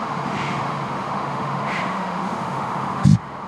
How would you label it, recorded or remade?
remade